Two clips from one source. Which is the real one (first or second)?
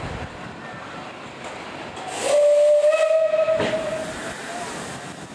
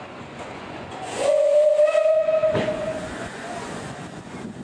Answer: first